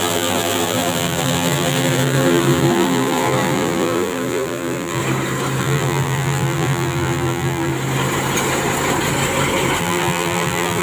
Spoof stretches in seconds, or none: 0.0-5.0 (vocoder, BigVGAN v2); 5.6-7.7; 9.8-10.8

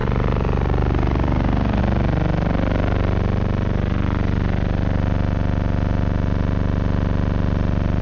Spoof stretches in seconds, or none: 0.0-1.8 (vocoder, BigVGAN v2)

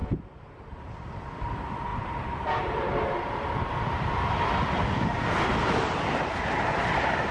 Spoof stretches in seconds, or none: 1.9-3.2 (vocoder, BigVGAN v2)

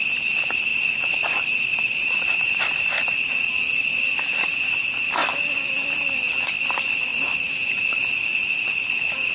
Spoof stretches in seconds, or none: 0.7-3.5 (vocoder, BigVGAN v2); 7.1-8.0

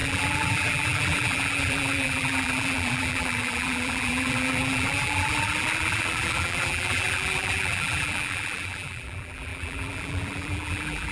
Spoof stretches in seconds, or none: 0.0-11.1 (vocoder, BigVGAN v2)

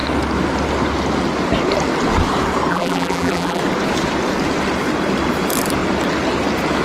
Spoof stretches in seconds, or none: 2.7-3.6 (vocoder, BigVGAN v2)

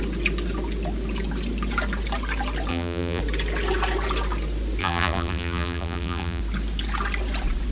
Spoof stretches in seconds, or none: 2.7-3.2 (vocoder, BigVGAN v2); 4.8-6.4

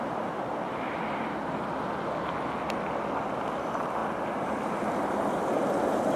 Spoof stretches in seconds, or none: none